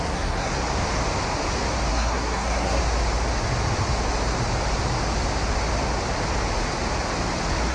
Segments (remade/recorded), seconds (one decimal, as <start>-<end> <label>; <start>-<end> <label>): 0.0-0.5 remade; 0.5-1.9 recorded; 1.9-2.8 remade; 2.8-7.7 recorded